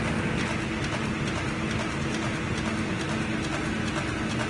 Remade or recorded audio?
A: recorded